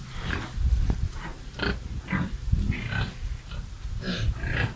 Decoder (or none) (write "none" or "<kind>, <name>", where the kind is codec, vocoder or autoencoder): none